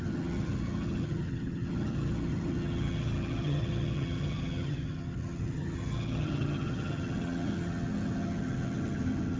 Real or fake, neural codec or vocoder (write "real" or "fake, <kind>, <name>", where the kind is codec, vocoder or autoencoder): fake, vocoder, HiFi-GAN